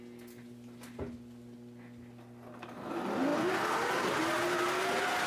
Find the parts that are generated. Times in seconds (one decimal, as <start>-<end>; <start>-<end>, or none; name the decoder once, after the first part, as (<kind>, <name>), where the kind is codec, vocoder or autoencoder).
none